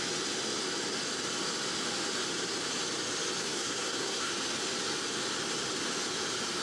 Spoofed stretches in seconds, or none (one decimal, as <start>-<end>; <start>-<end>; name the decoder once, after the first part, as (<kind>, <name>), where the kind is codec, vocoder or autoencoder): 3.4-4.3 (codec, SNAC)